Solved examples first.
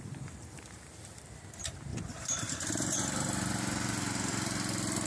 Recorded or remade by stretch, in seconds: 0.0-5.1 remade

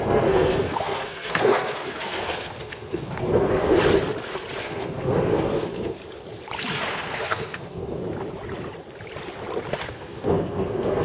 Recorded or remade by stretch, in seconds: 0.0-3.8 remade; 3.8-4.6 recorded; 4.6-6.0 remade; 6.0-6.7 recorded; 6.7-8.0 remade; 8.0-9.8 recorded; 9.8-11.0 remade